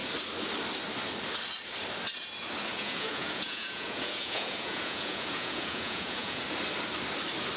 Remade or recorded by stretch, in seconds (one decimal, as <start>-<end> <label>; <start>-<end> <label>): 0.0-2.7 recorded; 2.7-6.4 remade; 6.4-7.6 recorded